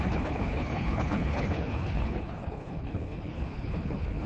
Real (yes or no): no